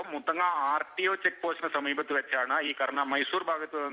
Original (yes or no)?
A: no